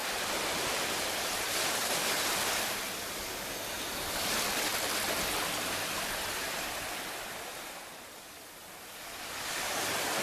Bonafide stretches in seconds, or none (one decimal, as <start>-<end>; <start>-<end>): 0.0-10.2